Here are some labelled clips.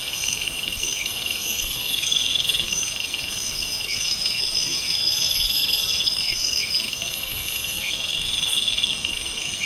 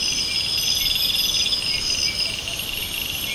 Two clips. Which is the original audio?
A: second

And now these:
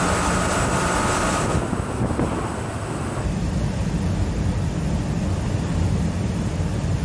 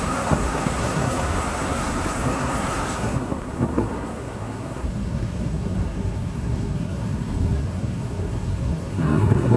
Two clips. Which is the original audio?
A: first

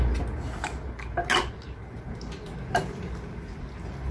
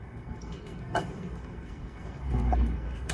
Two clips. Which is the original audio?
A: first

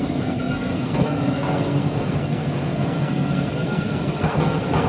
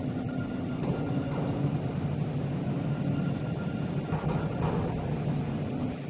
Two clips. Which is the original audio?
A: second